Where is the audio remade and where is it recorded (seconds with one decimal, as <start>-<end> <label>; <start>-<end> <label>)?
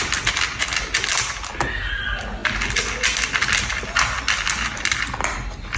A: 0.0-5.8 recorded